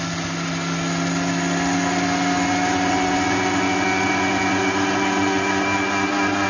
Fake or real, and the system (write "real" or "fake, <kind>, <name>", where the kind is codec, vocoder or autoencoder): real